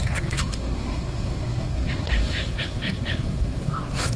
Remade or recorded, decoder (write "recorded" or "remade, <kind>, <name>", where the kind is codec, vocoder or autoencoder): remade, codec, SNAC